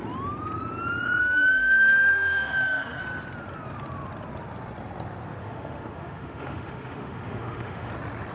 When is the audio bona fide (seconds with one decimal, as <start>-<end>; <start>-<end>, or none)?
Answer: 0.0-1.2; 3.0-5.4; 7.9-8.3